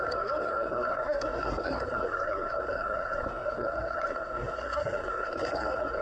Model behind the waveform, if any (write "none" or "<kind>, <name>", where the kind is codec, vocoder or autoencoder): codec, SNAC